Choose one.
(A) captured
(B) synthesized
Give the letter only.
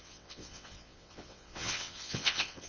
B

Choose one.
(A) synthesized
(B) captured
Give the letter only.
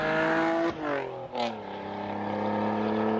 B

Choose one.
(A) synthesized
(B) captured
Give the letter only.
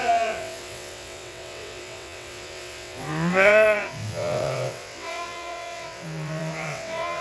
A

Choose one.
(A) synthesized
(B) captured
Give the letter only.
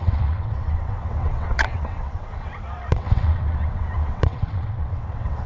A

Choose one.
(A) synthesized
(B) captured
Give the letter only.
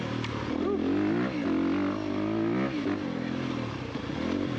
B